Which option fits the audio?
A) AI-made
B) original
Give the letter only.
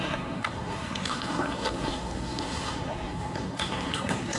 A